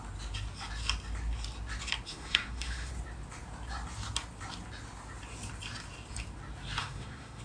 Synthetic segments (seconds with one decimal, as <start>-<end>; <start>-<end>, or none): 2.1-2.9; 6.8-7.4